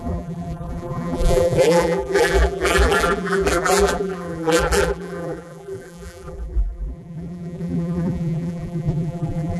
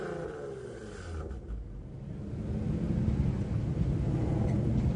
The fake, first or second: first